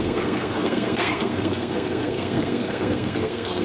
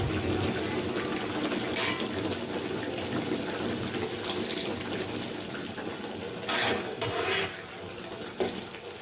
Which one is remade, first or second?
first